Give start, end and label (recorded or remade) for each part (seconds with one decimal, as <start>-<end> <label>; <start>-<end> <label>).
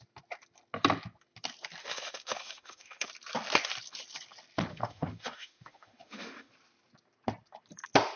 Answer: 0.0-1.8 recorded; 1.8-3.1 remade; 3.1-4.7 recorded; 4.7-6.5 remade; 6.5-8.2 recorded